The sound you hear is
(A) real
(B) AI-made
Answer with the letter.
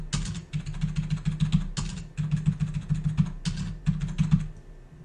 A